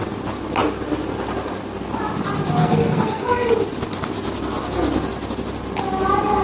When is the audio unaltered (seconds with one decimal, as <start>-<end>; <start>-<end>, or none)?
0.0-2.6; 3.5-6.4